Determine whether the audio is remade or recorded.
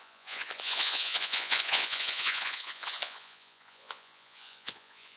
remade